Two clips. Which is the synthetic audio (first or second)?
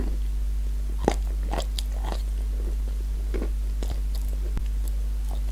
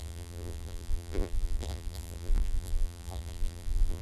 second